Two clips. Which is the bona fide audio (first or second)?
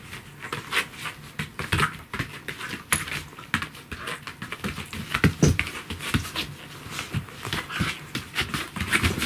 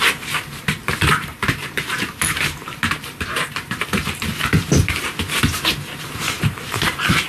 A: first